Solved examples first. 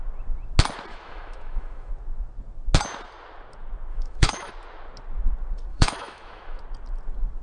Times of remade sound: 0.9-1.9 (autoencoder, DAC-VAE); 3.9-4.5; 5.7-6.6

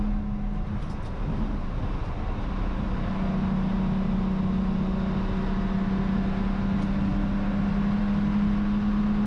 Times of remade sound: none

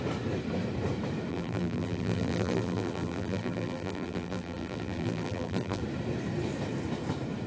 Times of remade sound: 1.3-5.8 (vocoder, BigVGAN v2)

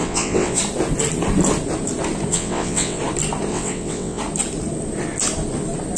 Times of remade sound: 0.0-0.6 (vocoder, WaveNeXt); 2.3-3.0; 3.5-4.2

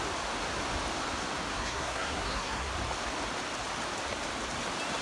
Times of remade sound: 1.5-2.7 (codec, SNAC)

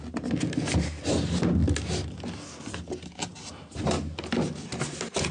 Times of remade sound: none

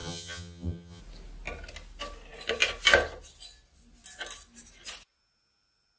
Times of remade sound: 0.0-1.0 (vocoder, HiFi-GAN)